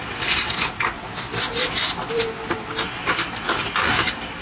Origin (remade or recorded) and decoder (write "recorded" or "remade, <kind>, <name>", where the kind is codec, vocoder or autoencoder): recorded